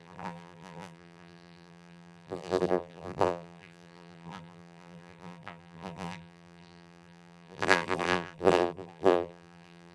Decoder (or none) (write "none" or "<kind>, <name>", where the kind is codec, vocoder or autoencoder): vocoder, BigVGAN v2